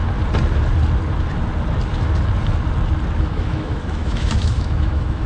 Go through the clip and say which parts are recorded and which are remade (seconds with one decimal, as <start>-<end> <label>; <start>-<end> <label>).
0.0-3.2 recorded; 3.2-5.3 remade